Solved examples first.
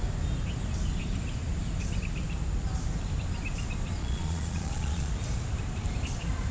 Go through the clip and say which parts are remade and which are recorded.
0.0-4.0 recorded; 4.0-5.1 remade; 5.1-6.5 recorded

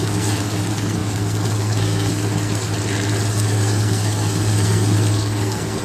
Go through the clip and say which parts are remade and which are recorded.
0.0-2.7 remade; 2.7-3.3 recorded; 3.3-5.8 remade

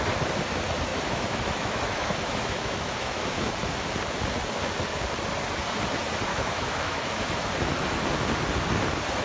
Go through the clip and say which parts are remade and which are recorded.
0.0-0.9 recorded; 0.9-3.5 remade; 3.5-6.3 recorded; 6.3-7.5 remade; 7.5-9.2 recorded

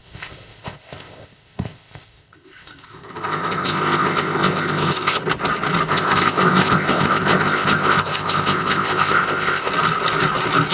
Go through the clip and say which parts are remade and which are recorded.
0.0-5.2 remade; 5.2-5.9 recorded; 5.9-9.7 remade; 9.7-10.7 recorded

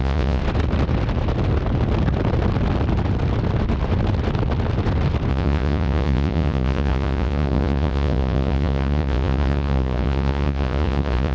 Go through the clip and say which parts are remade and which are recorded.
0.0-0.4 remade; 0.4-5.3 recorded; 5.3-11.3 remade

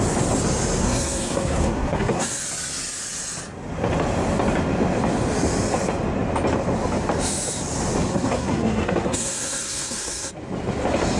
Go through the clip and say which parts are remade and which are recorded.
0.0-0.8 recorded; 0.8-2.4 remade; 2.4-8.1 recorded; 8.1-10.3 remade; 10.3-11.2 recorded

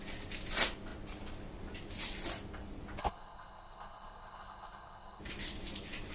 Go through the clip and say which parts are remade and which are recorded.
0.0-3.0 recorded; 3.0-5.2 remade; 5.2-6.1 recorded